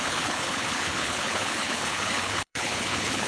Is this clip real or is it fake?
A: fake